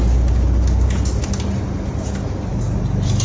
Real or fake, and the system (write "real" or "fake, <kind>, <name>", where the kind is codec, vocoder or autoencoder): real